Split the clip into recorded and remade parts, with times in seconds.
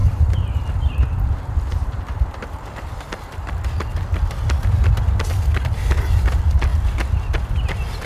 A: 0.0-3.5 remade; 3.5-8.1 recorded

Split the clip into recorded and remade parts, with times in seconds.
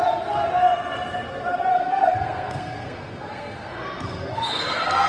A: 0.0-1.7 recorded; 1.7-5.1 remade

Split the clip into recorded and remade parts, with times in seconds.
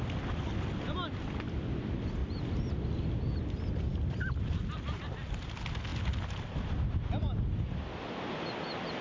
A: 0.0-9.0 recorded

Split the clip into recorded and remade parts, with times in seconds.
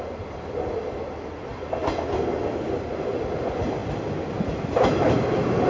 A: 0.0-5.7 recorded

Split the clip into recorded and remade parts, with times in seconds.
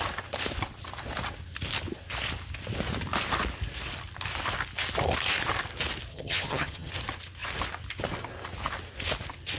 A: 0.0-6.1 recorded; 6.1-6.9 remade; 6.9-9.6 recorded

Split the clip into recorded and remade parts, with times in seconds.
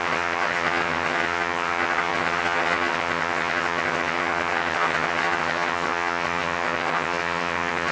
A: 0.0-7.9 remade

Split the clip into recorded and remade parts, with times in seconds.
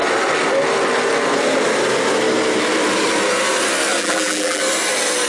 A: 0.0-4.0 recorded; 4.0-4.6 remade; 4.6-5.3 recorded